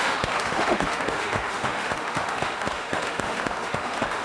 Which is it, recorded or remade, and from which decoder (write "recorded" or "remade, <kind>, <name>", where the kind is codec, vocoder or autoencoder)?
remade, autoencoder, DAC-VAE